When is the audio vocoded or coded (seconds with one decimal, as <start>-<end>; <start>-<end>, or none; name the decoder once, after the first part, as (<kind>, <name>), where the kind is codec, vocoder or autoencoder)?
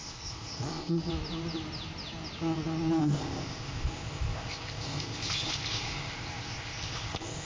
0.0-1.1 (codec, ZipCodec); 3.0-7.5